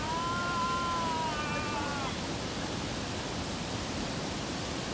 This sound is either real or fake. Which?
real